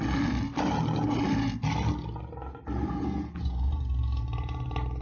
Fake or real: real